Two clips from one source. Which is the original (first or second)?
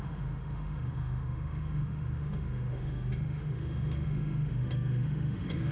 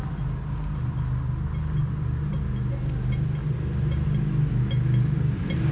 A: second